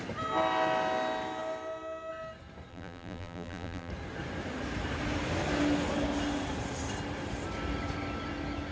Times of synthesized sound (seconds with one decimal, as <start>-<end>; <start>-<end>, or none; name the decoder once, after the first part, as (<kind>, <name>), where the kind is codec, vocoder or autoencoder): 2.7-3.9 (vocoder, BigVGAN v2)